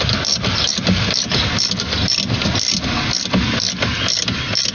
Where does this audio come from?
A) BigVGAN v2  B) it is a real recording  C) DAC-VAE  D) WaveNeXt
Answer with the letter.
B